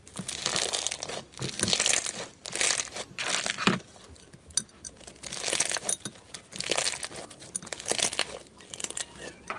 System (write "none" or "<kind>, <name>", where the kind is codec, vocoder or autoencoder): none